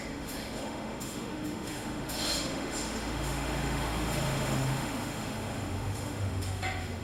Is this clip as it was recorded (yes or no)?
no